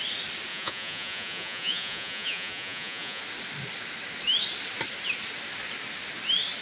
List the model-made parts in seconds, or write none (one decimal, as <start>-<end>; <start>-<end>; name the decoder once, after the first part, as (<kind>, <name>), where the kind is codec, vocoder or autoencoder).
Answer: 0.5-3.2 (vocoder, Vocos)